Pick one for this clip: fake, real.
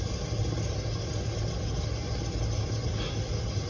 real